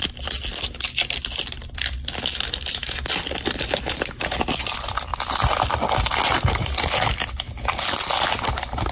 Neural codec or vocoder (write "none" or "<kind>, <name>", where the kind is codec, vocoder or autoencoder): none